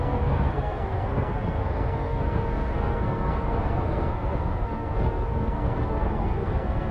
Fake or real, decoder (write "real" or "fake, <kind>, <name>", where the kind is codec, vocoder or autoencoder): fake, codec, SNAC